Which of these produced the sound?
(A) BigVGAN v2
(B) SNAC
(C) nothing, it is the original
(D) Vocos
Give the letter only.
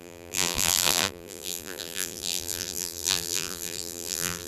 A